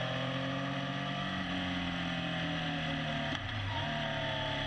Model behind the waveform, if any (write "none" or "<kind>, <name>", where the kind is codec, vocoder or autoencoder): none